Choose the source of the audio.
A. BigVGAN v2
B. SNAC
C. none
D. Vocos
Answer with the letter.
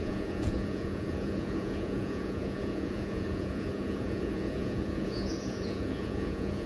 D